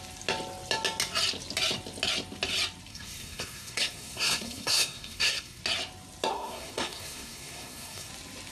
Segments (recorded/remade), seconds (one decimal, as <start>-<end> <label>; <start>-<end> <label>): 0.0-2.9 recorded; 2.9-5.6 remade; 5.6-6.3 recorded; 6.3-8.1 remade; 8.1-8.5 recorded